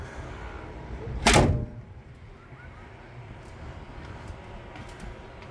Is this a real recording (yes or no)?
yes